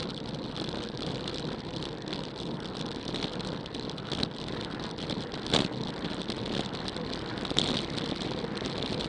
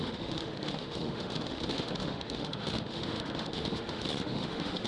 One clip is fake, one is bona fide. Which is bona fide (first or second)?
first